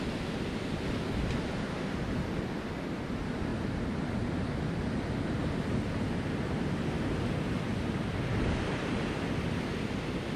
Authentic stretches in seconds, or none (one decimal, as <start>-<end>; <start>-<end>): 0.0-10.4